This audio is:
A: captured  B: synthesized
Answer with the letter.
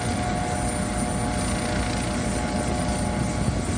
A